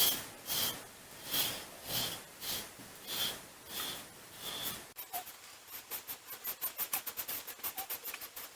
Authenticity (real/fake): real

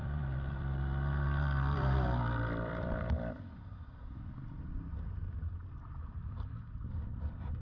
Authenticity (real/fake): fake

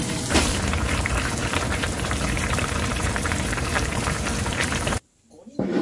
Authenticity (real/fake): fake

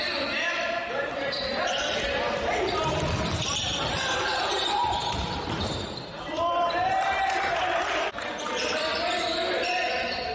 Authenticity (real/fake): fake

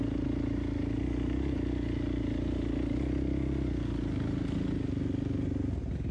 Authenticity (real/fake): real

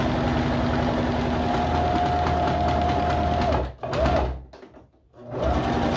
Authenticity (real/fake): real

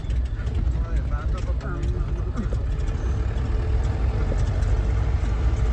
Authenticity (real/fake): real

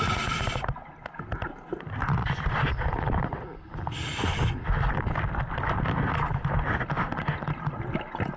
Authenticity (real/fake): real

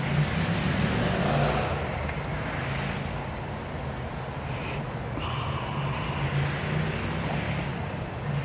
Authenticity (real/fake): real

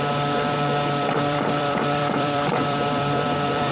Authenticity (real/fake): fake